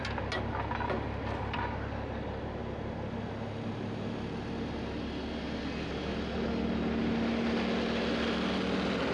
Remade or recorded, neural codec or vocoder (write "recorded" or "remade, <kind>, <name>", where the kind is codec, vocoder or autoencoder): recorded